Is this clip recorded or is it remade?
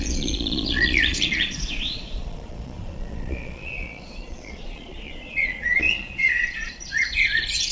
remade